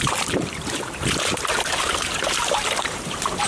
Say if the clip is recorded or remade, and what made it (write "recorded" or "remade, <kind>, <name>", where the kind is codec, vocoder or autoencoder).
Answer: remade, vocoder, BigVGAN v2